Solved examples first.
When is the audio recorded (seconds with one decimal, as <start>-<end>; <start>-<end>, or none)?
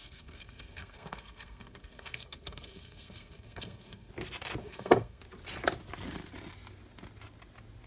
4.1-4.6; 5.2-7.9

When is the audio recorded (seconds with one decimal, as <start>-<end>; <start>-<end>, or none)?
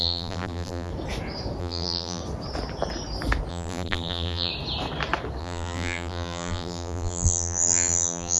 0.9-1.6; 2.2-3.5; 4.5-5.4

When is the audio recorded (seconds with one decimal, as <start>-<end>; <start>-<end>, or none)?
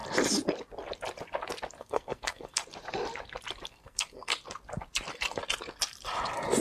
0.0-1.8; 2.6-3.7; 4.3-6.6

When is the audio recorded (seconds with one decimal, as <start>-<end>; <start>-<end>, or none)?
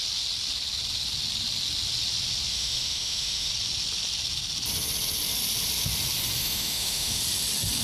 0.0-2.5; 3.5-6.4; 7.2-7.8